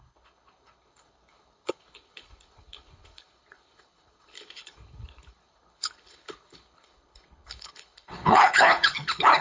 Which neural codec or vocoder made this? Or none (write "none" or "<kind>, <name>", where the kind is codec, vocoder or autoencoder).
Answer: codec, HILCodec